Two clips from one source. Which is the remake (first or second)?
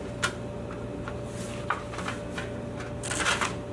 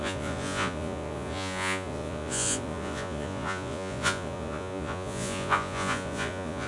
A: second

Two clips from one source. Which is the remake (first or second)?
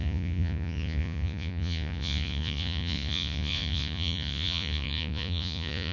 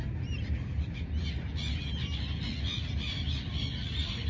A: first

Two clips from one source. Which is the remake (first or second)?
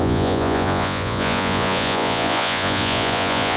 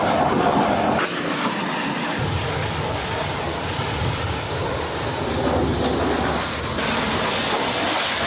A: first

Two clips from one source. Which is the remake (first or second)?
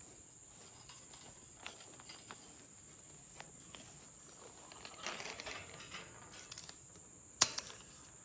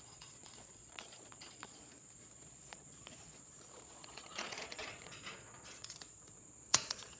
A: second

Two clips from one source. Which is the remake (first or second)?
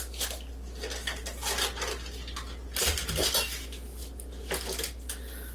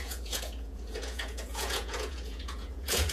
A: second